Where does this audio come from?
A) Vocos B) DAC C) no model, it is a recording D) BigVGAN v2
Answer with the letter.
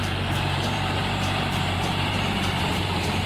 D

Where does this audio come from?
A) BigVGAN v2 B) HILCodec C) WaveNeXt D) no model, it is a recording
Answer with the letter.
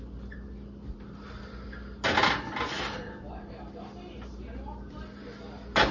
D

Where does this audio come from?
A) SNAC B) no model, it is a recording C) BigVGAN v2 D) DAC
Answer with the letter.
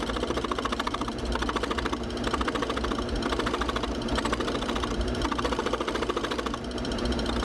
C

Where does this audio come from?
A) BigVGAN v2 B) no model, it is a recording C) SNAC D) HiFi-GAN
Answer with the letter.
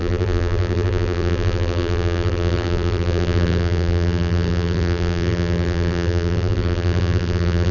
A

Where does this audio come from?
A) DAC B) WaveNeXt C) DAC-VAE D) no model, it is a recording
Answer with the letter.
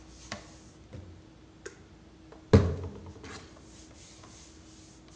D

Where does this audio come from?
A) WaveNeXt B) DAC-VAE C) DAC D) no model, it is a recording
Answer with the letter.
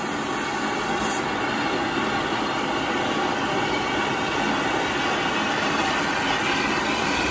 D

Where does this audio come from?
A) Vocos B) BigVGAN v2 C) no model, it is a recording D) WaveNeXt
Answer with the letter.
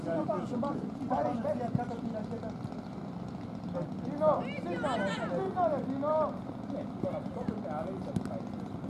C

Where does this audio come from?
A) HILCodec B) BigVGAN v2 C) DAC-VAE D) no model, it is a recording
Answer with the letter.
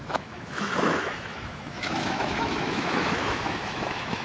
C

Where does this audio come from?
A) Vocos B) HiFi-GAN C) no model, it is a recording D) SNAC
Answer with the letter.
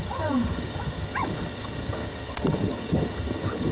B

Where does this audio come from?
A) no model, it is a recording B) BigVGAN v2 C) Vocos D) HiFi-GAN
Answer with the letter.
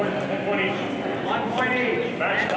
A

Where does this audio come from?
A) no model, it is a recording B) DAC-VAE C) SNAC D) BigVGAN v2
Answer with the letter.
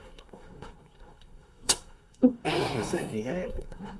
C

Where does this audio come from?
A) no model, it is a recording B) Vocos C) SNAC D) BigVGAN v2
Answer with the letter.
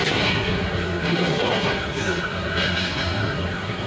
C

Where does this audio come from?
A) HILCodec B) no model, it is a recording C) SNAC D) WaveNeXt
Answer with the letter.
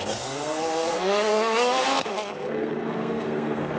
C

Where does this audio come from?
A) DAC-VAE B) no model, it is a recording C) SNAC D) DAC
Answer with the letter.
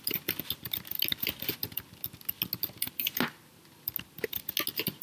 B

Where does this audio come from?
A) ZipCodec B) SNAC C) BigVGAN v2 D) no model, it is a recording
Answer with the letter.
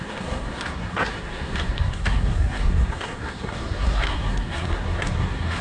B